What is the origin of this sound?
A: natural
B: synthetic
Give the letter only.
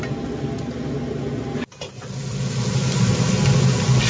A